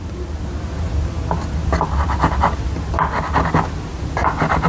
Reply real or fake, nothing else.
real